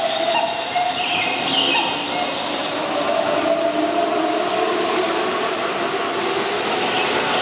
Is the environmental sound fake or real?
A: real